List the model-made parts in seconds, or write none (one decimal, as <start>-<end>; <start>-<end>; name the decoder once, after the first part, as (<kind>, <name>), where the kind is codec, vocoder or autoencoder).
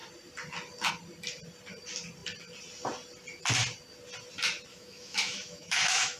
4.7-6.2 (autoencoder, DAC-VAE)